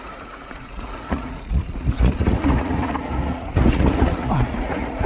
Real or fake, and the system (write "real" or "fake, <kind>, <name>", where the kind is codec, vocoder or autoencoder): fake, vocoder, Vocos